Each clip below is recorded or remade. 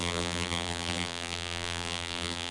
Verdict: remade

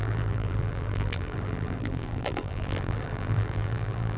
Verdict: remade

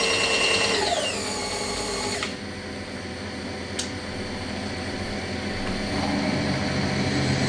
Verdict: recorded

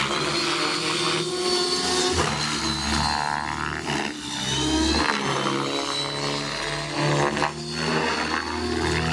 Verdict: recorded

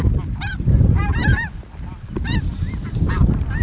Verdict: remade